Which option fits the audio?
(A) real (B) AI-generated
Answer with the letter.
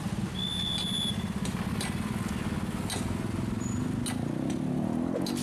A